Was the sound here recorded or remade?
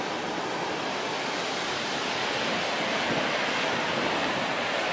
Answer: recorded